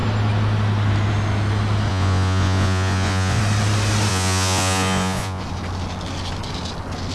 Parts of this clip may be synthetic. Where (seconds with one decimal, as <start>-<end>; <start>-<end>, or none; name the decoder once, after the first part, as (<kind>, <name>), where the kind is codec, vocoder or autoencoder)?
1.9-3.4 (vocoder, Vocos); 4.1-5.4